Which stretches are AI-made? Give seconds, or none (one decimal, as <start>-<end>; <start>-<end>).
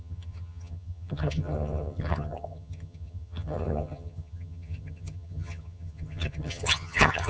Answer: 0.0-7.3